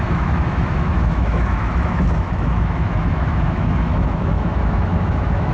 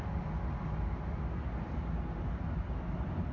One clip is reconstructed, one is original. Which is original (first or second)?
second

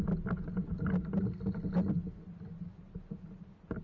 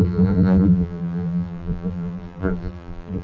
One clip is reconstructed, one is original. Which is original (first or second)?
first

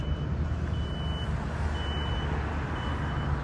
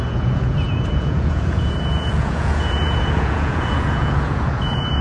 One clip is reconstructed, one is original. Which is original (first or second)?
first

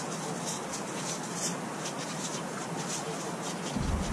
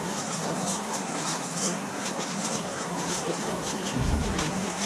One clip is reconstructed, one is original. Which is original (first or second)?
first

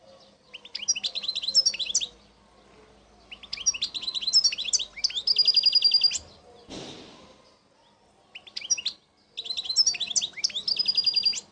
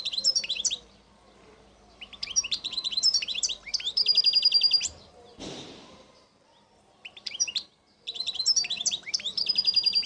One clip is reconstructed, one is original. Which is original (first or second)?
first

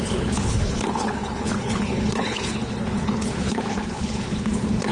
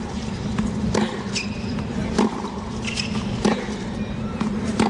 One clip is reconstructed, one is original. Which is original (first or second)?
second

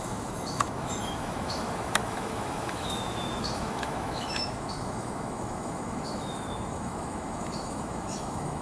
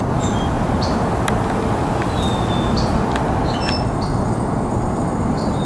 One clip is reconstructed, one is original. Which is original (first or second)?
second